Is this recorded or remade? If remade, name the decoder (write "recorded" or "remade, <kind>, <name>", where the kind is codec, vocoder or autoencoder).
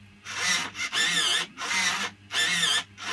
recorded